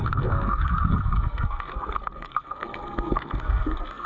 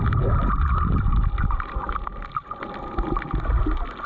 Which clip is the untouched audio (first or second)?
second